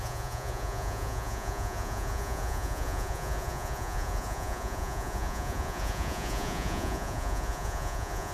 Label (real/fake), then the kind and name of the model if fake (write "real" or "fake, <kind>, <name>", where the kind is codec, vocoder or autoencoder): fake, vocoder, Vocos